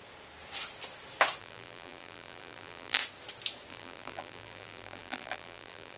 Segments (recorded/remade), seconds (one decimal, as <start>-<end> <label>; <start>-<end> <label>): 0.0-1.4 recorded; 1.4-3.0 remade; 3.0-3.7 recorded; 3.7-6.0 remade